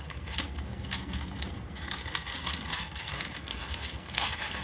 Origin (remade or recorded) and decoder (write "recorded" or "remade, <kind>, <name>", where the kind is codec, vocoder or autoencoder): remade, codec, SNAC